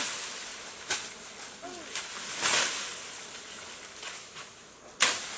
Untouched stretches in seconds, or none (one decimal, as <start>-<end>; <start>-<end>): 0.0-4.2; 4.8-5.4

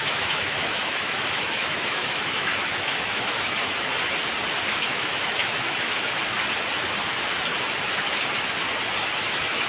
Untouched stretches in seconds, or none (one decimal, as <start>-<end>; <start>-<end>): 3.9-4.8; 6.2-9.2

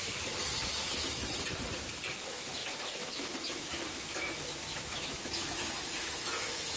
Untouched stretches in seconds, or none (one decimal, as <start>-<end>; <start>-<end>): 1.2-2.2

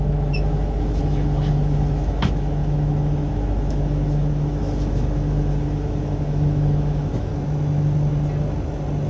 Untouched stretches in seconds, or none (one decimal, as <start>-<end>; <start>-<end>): 7.3-9.1

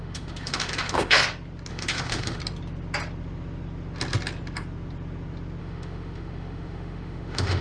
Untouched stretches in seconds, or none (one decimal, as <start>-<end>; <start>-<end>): 1.2-1.7; 2.4-5.6

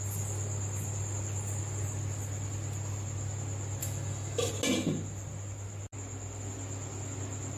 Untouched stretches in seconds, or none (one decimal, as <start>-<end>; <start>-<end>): 0.0-3.8; 4.5-7.6

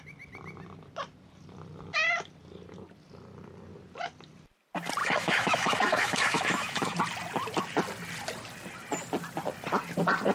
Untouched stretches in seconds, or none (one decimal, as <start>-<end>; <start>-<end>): 0.0-5.0; 7.0-10.3